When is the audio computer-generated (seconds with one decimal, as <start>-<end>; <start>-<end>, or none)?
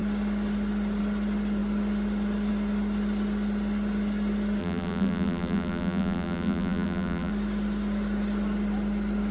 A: 4.6-7.3